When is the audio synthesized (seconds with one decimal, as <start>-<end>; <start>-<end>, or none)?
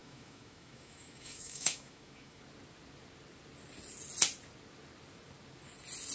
0.0-2.4